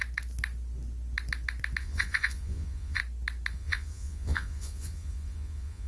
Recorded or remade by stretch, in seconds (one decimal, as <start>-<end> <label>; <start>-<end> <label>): 0.0-1.8 recorded; 1.8-3.0 remade; 3.0-3.5 recorded; 3.5-5.9 remade